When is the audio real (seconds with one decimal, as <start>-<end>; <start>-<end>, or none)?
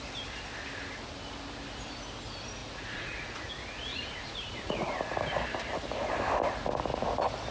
0.0-2.6; 3.5-3.9; 5.0-7.5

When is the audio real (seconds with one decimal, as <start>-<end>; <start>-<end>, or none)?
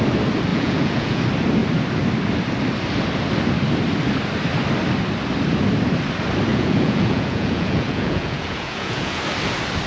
0.0-0.5; 1.2-6.5; 9.2-9.9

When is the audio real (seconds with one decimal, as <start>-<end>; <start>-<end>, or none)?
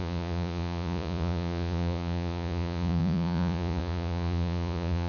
none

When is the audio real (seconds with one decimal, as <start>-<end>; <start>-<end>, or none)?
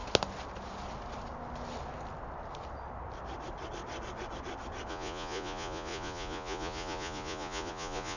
0.0-4.9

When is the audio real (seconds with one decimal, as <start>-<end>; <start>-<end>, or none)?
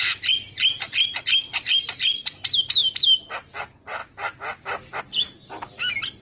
0.0-6.2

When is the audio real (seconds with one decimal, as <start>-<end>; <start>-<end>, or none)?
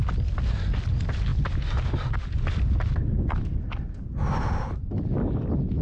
0.0-5.8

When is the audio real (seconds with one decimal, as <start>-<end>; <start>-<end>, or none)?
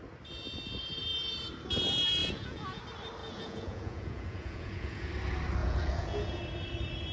0.0-2.2; 2.8-3.2; 5.1-5.6; 6.4-7.1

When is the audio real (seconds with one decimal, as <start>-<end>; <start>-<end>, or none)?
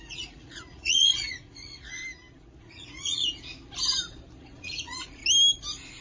2.0-2.6; 3.2-4.4; 5.2-6.0